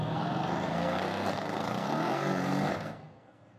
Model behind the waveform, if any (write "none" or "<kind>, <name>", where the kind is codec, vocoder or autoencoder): codec, SNAC